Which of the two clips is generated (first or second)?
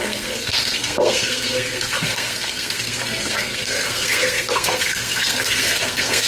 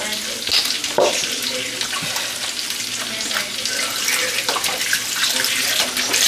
first